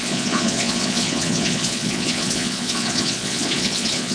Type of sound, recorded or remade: remade